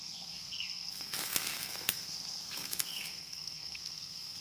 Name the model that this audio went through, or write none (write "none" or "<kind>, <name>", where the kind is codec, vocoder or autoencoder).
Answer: codec, SNAC